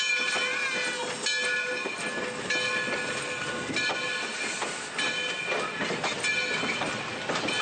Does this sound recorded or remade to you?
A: recorded